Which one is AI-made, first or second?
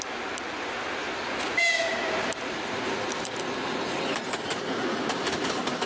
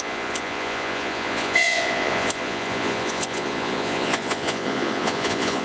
second